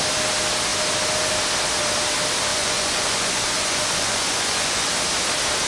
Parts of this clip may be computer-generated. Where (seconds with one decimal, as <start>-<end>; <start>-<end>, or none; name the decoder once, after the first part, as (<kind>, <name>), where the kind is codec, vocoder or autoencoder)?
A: 2.5-4.9 (vocoder, Vocos)

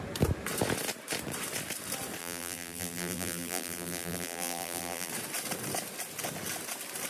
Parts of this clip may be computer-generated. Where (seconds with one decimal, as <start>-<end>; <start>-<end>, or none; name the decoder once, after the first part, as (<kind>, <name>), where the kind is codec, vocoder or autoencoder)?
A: 2.2-5.1 (vocoder, BigVGAN v2)

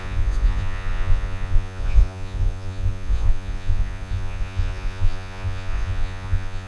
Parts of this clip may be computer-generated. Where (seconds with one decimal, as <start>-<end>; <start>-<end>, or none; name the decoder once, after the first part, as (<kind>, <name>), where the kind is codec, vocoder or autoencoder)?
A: 0.0-6.7 (vocoder, Vocos)